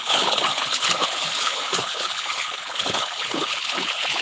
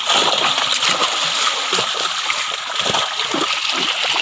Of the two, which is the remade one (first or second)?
first